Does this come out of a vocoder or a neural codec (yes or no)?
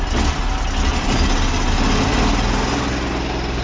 no